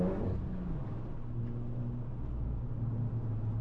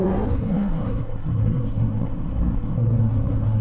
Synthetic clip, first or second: second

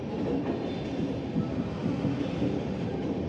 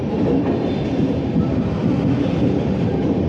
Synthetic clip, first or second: second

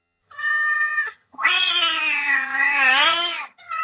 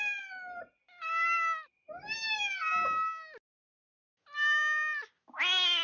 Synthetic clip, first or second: first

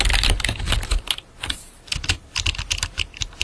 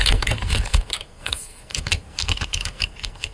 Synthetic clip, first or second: second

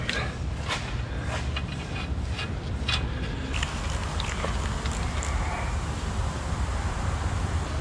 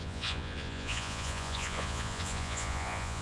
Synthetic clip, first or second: second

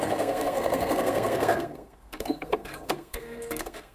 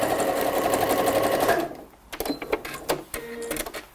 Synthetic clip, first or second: first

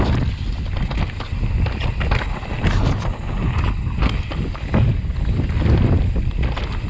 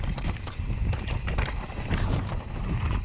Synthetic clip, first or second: second